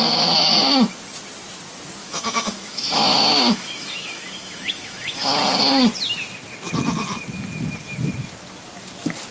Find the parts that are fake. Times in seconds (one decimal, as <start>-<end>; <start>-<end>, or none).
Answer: 2.0-5.4

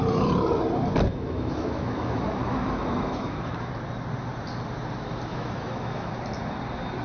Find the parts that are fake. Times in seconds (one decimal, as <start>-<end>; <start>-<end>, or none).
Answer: 1.1-3.7; 5.3-6.1

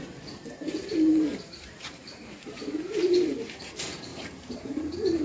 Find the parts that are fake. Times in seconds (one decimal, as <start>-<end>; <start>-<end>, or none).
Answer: 1.3-2.6; 4.1-5.2

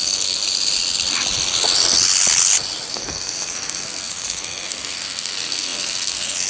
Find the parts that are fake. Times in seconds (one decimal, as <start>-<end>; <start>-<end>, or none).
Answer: 0.0-0.4; 2.9-6.5